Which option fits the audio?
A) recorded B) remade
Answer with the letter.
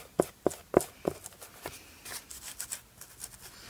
A